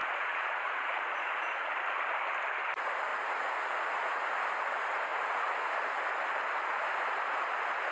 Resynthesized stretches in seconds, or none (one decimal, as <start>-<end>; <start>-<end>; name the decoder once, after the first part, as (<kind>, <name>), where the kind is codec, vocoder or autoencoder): 0.0-1.7 (vocoder, Vocos); 3.1-4.2; 5.1-5.7